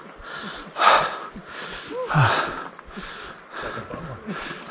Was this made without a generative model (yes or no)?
yes